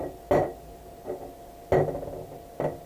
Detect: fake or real real